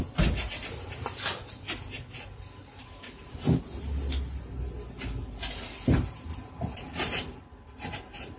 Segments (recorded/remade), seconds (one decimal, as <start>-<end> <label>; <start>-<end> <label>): 0.0-8.4 recorded